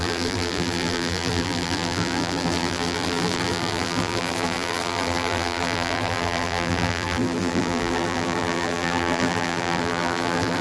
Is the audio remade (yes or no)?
yes